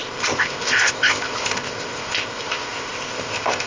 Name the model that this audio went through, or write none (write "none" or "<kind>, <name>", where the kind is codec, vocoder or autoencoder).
codec, ZipCodec